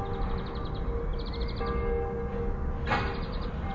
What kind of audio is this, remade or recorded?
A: recorded